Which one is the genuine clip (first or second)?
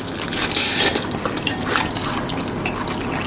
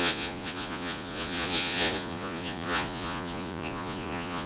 first